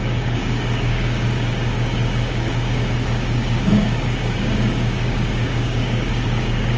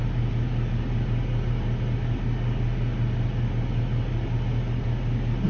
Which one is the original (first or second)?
second